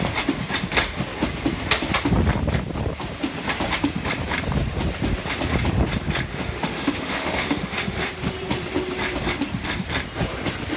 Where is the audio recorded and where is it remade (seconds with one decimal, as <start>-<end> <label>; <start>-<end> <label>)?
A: 0.0-6.3 recorded; 6.3-8.1 remade; 8.1-10.8 recorded